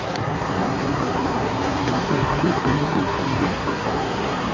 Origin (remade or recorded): remade